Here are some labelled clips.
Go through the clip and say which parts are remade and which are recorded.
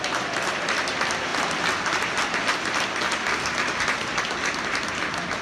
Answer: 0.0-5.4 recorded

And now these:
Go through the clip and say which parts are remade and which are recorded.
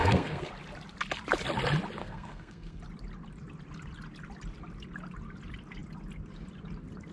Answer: 0.0-0.5 remade; 0.5-2.0 recorded; 2.0-2.8 remade; 2.8-7.1 recorded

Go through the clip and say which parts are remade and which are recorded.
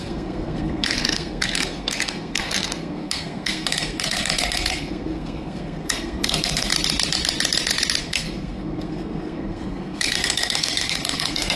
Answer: 0.0-6.7 remade; 6.7-8.0 recorded; 8.0-11.6 remade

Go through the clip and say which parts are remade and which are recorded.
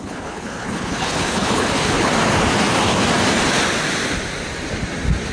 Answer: 0.0-2.1 remade; 2.1-5.3 recorded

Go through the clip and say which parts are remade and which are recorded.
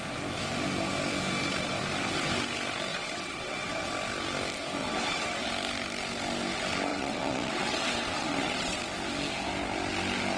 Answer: 0.0-2.9 recorded; 2.9-3.9 remade; 3.9-4.8 recorded; 4.8-5.5 remade; 5.5-6.9 recorded; 6.9-8.8 remade; 8.8-10.4 recorded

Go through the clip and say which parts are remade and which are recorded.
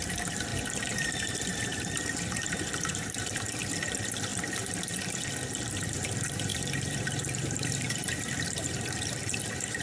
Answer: 0.0-0.5 remade; 0.5-1.0 recorded; 1.0-4.3 remade; 4.3-5.9 recorded; 5.9-9.8 remade